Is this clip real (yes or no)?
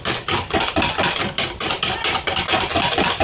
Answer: yes